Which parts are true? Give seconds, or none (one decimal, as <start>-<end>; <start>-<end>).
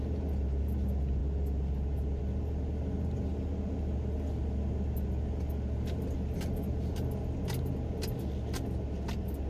0.0-9.5